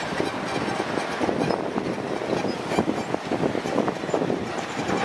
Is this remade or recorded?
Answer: recorded